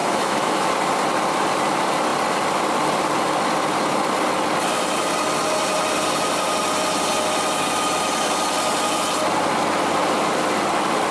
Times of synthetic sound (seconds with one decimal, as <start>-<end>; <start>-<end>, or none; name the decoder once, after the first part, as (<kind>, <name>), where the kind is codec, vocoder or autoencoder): 0.0-0.7 (autoencoder, DAC-VAE)